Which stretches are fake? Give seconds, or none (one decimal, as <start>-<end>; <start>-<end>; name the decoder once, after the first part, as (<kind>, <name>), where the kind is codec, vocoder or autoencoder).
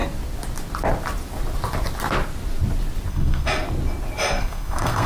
3.1-3.5 (codec, SNAC); 4.4-5.1